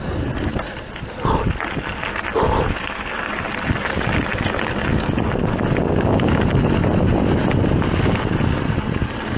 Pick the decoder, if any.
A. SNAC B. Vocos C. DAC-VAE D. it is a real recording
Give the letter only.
D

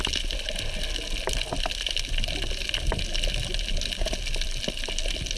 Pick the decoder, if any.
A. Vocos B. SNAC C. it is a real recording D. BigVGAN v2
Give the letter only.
C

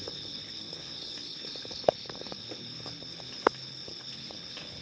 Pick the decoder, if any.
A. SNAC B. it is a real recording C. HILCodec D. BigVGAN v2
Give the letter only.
C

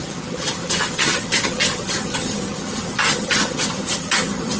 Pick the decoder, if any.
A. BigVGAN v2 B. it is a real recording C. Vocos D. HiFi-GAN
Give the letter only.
D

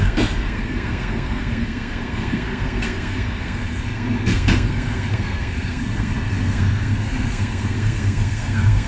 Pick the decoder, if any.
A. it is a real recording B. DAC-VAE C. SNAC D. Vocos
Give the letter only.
C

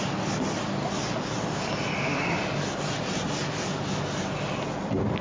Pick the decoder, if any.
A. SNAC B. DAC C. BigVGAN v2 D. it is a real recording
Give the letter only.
D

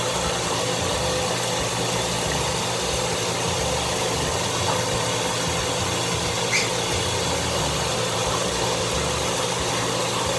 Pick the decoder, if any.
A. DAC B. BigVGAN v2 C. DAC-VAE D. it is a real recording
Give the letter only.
D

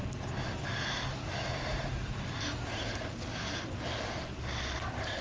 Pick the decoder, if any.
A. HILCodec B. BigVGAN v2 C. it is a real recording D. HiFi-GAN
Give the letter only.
C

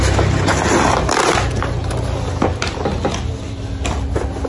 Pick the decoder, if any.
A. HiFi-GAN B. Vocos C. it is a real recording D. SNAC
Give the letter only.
C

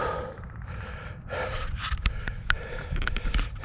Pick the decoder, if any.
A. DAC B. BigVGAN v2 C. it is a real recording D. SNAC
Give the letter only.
B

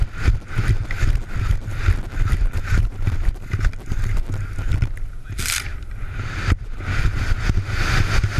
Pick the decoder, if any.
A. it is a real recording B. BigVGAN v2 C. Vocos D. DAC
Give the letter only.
A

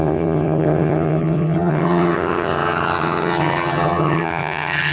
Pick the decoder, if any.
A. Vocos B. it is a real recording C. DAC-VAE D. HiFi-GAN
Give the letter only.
D